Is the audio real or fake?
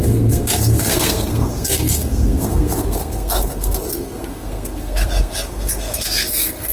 fake